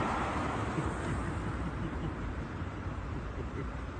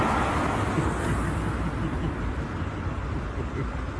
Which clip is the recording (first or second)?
second